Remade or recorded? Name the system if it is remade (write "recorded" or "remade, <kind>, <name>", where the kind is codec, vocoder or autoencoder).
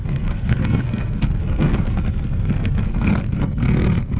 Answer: remade, codec, SNAC